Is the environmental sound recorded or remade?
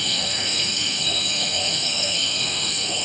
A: remade